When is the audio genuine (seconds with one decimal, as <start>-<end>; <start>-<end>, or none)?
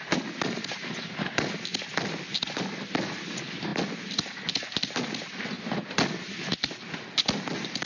0.0-7.9